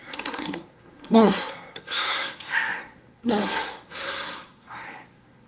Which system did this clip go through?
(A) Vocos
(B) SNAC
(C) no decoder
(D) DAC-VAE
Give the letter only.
B